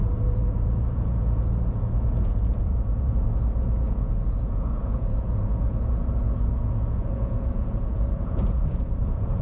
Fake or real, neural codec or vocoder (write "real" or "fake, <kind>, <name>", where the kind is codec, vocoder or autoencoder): fake, vocoder, Vocos